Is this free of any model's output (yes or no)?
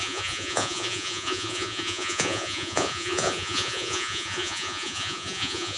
no